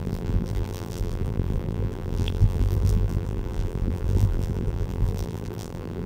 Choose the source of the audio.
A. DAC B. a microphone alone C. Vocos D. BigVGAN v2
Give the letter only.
D